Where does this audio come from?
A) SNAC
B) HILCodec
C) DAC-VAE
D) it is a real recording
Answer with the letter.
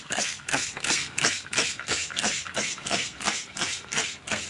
A